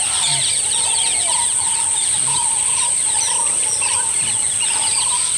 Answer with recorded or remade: recorded